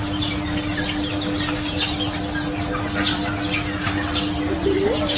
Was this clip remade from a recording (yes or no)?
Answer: no